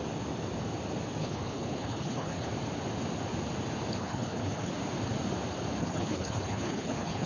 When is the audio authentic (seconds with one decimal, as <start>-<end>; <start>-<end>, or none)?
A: 0.0-1.2; 2.5-3.9; 4.7-5.8